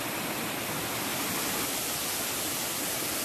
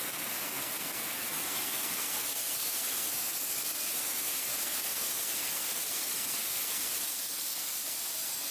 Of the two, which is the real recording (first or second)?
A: first